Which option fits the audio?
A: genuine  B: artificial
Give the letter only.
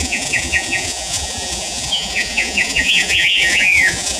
B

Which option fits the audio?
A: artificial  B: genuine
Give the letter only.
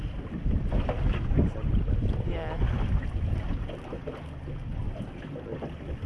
B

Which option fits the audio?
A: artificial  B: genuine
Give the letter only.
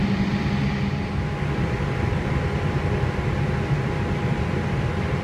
B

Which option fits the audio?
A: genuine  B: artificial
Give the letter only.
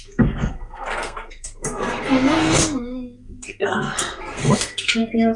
B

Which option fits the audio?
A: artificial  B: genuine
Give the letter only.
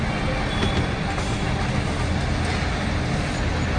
B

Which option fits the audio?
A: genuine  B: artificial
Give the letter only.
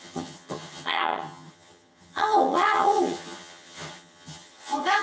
B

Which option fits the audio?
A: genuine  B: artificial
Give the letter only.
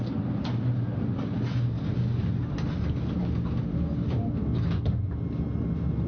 A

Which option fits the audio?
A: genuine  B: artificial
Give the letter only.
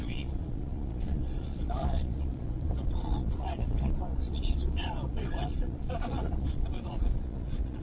B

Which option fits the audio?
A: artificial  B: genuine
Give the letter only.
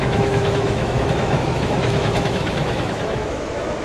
A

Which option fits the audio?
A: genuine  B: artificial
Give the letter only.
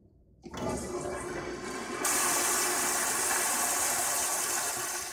A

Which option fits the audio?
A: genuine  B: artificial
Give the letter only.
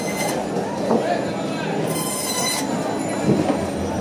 A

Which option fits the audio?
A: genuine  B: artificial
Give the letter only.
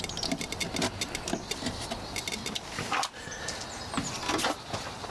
A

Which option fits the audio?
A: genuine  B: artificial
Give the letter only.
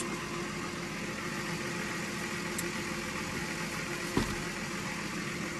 A